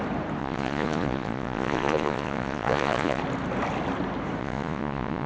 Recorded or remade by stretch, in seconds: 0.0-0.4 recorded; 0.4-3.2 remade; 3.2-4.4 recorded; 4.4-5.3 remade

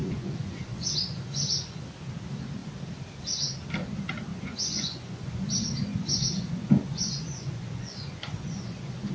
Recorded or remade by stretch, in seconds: 0.0-1.8 remade; 1.8-4.3 recorded; 4.3-5.5 remade; 5.5-5.9 recorded; 5.9-9.1 remade

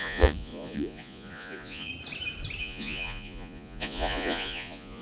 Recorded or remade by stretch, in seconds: 0.0-1.9 remade; 1.9-2.6 recorded; 2.6-5.0 remade

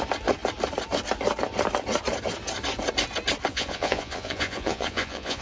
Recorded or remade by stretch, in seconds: 0.0-3.5 recorded; 3.5-5.4 remade

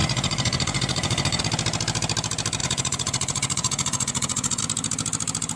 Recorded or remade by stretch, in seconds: 0.0-1.4 remade; 1.4-2.6 recorded; 2.6-4.6 remade; 4.6-5.6 recorded

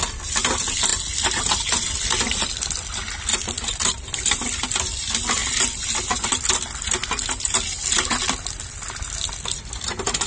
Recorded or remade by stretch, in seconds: 0.0-10.3 recorded

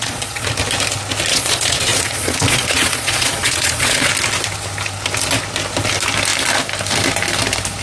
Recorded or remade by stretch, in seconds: 0.0-0.5 remade; 0.5-1.3 recorded; 1.3-4.1 remade; 4.1-7.8 recorded

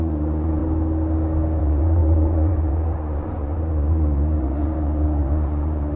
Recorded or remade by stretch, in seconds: 0.0-0.6 remade; 0.6-1.6 recorded; 1.6-6.0 remade